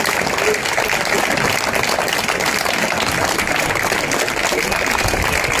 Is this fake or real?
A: real